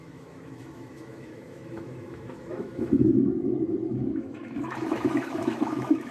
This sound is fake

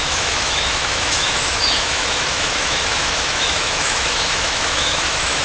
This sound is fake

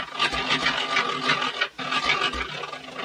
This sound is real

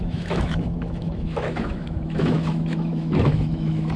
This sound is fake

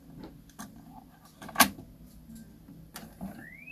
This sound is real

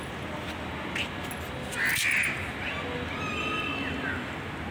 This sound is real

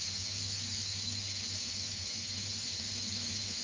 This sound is fake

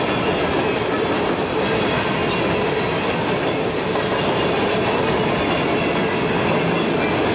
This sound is real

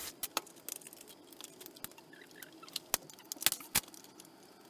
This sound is real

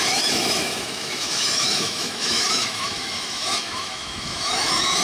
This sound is fake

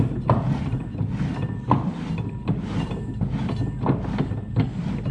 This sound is real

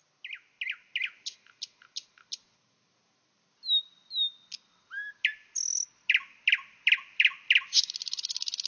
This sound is real